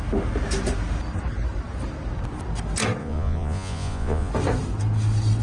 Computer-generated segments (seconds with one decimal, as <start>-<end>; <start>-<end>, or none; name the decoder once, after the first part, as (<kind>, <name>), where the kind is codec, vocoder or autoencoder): 3.0-4.3 (vocoder, Vocos)